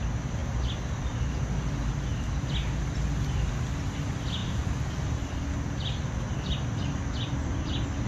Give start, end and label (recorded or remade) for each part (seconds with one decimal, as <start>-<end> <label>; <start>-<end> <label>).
0.0-8.1 recorded